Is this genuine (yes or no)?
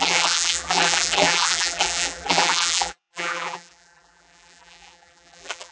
no